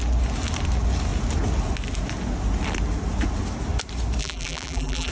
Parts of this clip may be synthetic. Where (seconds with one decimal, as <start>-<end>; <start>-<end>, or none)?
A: 4.2-5.1